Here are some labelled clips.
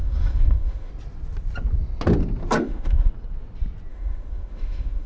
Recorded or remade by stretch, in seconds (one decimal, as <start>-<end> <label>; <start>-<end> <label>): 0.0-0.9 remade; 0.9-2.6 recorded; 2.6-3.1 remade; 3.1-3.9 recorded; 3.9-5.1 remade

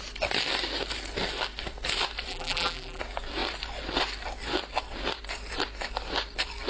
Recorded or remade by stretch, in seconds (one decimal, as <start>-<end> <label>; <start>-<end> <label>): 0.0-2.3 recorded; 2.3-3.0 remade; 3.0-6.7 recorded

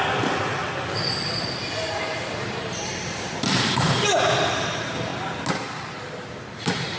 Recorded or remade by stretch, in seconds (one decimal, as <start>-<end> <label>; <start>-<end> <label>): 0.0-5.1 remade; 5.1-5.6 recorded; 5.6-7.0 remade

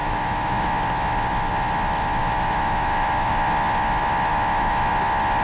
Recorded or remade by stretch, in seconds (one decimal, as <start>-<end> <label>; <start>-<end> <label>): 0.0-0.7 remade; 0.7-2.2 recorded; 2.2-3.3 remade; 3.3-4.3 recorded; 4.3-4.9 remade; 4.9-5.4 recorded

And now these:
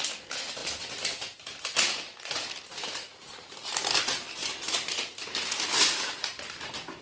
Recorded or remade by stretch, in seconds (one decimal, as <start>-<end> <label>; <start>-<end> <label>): 0.0-7.0 recorded

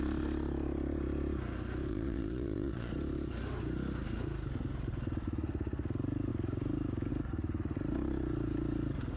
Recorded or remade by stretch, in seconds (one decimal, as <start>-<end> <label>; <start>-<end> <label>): 0.0-1.9 recorded; 1.9-2.9 remade; 2.9-9.2 recorded

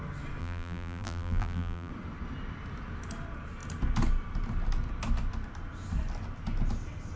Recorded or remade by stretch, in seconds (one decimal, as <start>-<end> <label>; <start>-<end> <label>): 0.0-0.4 recorded; 0.4-1.9 remade; 1.9-7.2 recorded

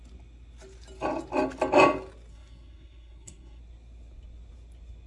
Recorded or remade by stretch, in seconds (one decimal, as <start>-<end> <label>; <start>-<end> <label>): 0.0-2.3 recorded; 2.3-3.6 remade; 3.6-5.1 recorded